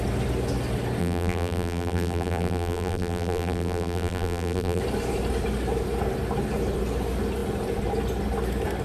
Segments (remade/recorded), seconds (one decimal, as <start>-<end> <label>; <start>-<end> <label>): 0.0-1.0 recorded; 1.0-4.8 remade; 4.8-8.8 recorded

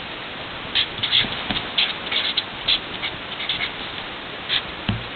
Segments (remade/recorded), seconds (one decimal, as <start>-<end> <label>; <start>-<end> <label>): 0.0-5.2 recorded

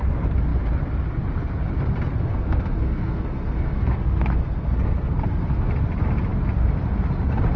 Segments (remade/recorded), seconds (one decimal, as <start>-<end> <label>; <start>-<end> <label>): 0.0-2.3 recorded; 2.3-5.7 remade; 5.7-7.6 recorded

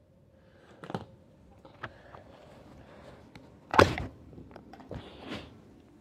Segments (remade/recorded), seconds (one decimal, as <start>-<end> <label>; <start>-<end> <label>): 0.0-3.7 recorded; 3.7-5.0 remade; 5.0-6.0 recorded

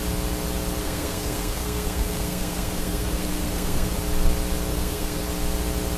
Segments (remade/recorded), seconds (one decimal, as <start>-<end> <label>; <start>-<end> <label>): 0.0-0.8 recorded; 0.8-4.0 remade; 4.0-4.7 recorded; 4.7-5.2 remade; 5.2-6.0 recorded

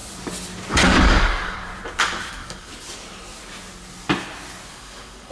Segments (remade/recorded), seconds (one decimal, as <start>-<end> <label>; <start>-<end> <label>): 0.0-0.7 recorded; 0.7-1.7 remade; 1.7-2.3 recorded; 2.3-2.7 remade; 2.7-4.7 recorded; 4.7-5.3 remade

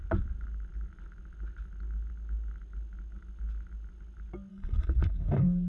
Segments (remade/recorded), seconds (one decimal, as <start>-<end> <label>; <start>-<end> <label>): 0.0-4.5 recorded; 4.5-5.7 remade

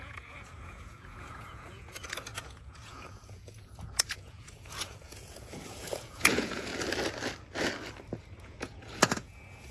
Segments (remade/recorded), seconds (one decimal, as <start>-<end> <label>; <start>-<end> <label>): 0.0-6.7 remade; 6.7-8.4 recorded; 8.4-9.7 remade